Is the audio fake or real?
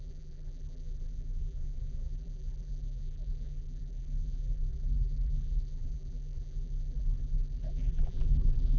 fake